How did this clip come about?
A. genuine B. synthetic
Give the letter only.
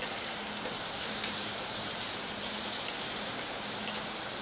B